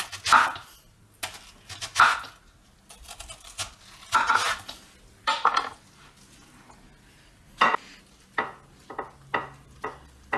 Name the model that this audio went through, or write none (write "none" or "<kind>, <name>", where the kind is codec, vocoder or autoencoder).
none